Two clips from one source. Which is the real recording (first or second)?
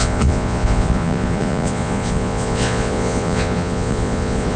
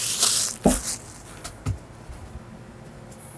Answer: second